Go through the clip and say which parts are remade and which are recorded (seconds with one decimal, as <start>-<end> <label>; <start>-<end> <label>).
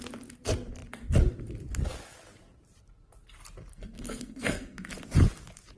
0.0-3.7 recorded; 3.7-4.9 remade; 4.9-5.8 recorded